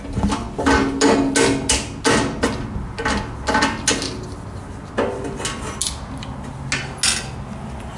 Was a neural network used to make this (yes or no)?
no